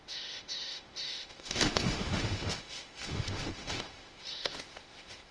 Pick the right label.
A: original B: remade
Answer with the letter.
B